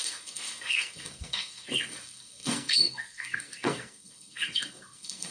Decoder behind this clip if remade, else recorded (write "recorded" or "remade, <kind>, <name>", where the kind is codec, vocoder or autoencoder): remade, codec, SNAC